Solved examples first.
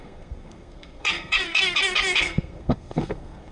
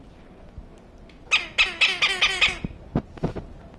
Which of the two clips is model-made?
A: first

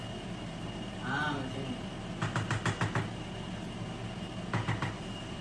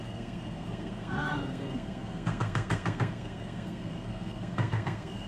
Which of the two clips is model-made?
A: second